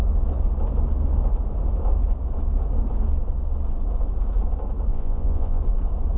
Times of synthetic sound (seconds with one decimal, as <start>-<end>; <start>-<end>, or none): 4.9-5.6